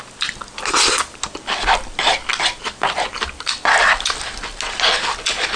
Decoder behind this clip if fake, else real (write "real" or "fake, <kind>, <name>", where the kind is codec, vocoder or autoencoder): real